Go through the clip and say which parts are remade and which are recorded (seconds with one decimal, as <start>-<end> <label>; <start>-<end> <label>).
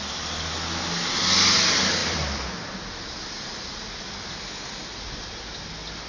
0.0-2.0 recorded; 2.0-5.6 remade; 5.6-6.1 recorded